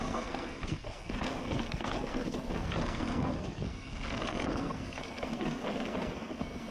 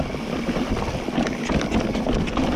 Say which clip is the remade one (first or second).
first